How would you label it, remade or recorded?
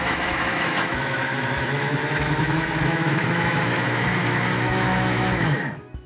remade